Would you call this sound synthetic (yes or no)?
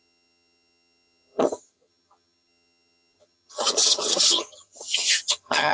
yes